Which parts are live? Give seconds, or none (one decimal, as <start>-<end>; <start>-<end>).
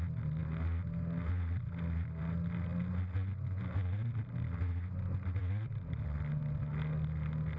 0.0-7.6